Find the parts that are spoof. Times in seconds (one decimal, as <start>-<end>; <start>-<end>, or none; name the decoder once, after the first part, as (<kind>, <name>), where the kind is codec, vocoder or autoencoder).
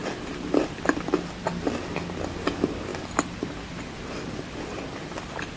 none